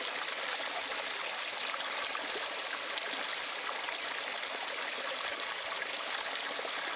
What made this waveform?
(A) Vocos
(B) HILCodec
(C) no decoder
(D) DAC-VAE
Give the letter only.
C